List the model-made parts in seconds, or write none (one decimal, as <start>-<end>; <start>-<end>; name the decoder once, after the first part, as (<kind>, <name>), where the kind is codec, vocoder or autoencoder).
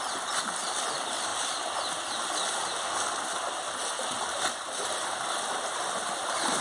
none